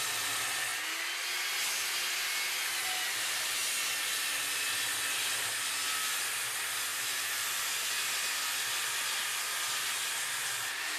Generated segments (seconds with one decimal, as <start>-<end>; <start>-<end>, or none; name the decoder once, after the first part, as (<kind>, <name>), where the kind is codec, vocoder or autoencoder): 6.9-7.5 (vocoder, BigVGAN v2)